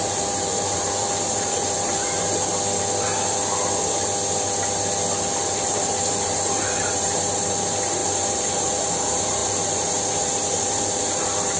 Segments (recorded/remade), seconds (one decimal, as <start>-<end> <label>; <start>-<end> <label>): 0.0-2.5 remade; 2.5-5.4 recorded; 5.4-11.6 remade